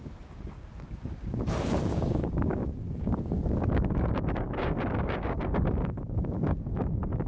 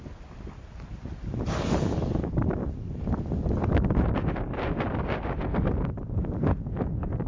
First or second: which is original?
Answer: second